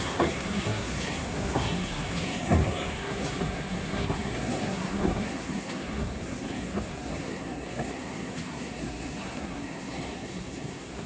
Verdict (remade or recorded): remade